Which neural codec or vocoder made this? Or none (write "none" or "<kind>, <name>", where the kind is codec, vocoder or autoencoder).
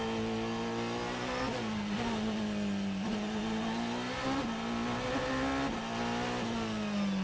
none